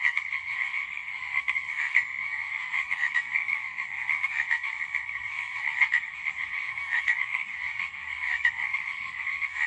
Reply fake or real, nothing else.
fake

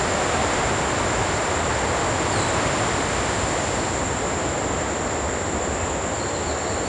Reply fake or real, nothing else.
real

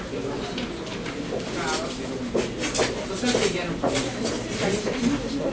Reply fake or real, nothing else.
real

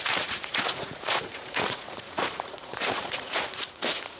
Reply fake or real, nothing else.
fake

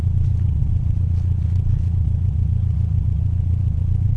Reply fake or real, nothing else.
fake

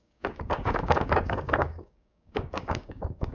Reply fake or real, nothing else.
fake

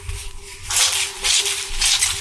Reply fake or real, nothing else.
fake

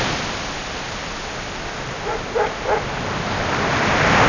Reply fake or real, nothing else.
real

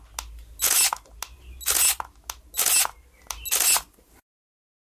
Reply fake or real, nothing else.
real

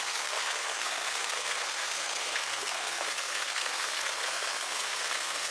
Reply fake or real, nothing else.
fake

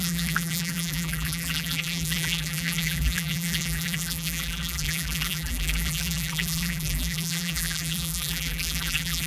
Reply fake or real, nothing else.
fake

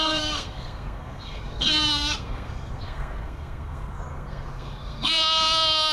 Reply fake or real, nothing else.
fake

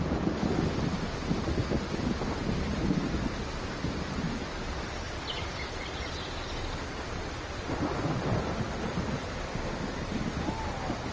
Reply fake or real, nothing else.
real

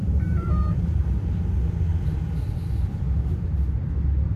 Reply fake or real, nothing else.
fake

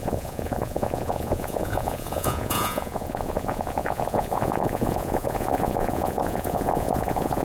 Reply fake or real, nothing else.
fake